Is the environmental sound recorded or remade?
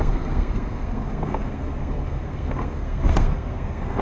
remade